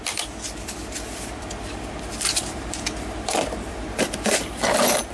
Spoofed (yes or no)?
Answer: yes